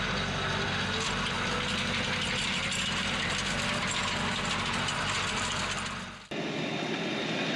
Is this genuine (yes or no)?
yes